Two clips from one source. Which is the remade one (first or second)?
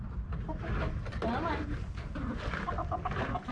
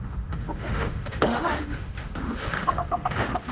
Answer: second